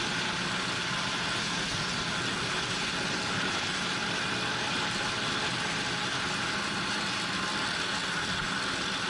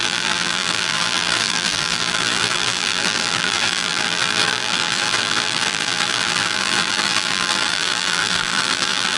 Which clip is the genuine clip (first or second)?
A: first